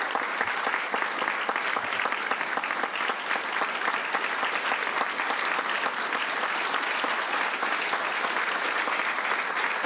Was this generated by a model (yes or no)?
no